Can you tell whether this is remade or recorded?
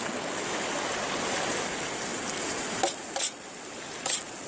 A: recorded